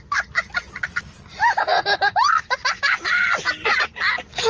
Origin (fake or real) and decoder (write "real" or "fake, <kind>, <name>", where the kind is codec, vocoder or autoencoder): real